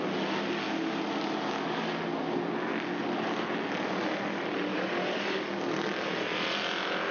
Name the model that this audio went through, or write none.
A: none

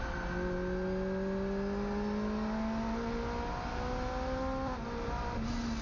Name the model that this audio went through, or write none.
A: none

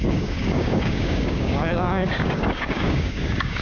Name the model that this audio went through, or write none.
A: codec, DAC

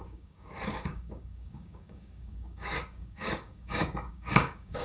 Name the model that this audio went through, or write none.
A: codec, DAC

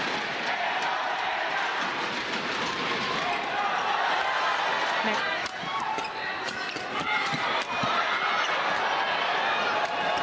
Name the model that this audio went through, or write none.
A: none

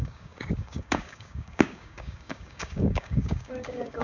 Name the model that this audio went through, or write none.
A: codec, DAC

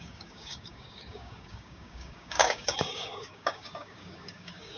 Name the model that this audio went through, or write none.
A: codec, DAC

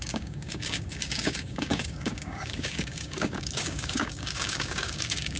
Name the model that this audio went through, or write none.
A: codec, DAC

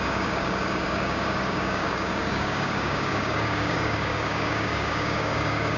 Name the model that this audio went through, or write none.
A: codec, DAC